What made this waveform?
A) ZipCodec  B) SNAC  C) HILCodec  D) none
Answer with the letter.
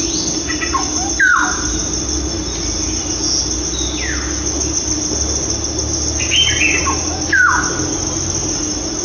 D